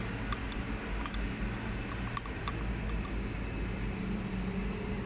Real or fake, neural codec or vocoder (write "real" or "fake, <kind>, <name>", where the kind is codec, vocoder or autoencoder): real